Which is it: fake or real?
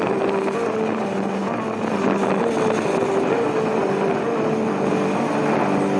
real